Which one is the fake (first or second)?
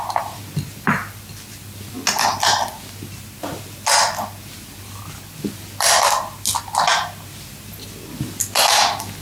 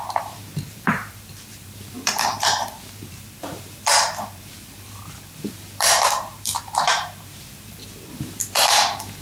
second